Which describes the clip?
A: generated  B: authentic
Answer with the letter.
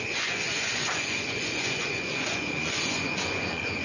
A